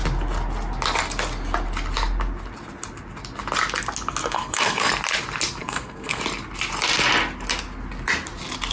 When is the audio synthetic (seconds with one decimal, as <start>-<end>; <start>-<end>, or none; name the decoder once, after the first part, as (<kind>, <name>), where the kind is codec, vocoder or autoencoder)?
4.2-4.9 (codec, SNAC); 5.6-6.2